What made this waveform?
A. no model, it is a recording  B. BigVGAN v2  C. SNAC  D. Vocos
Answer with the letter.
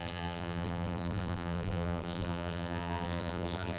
B